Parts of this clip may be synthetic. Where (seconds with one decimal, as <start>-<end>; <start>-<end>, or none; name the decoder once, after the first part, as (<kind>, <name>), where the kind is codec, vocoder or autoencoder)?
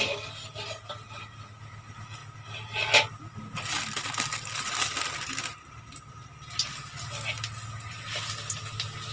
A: none